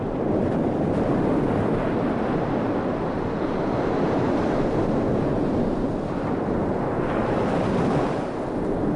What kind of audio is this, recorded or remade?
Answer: recorded